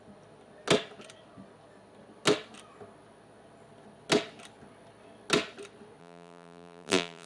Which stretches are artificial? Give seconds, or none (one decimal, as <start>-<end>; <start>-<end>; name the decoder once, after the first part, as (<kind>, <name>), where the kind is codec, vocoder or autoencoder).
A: 6.0-7.3 (vocoder, BigVGAN v2)